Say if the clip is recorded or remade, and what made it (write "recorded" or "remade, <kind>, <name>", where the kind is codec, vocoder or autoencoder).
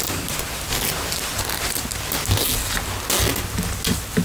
recorded